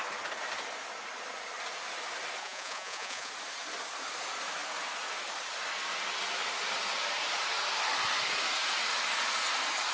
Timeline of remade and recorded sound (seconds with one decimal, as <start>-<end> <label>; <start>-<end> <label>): 0.0-2.4 recorded; 2.4-3.3 remade; 3.3-9.9 recorded